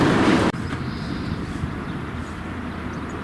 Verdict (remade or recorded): remade